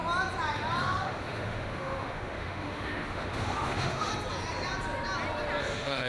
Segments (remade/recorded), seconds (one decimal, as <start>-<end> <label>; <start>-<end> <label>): 0.0-0.8 recorded; 0.8-4.1 remade; 4.1-5.6 recorded; 5.6-6.1 remade